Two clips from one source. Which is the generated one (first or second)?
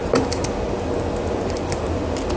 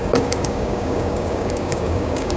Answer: second